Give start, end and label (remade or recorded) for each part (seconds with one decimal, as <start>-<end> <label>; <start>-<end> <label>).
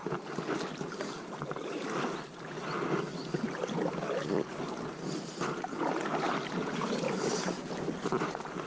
0.0-8.7 recorded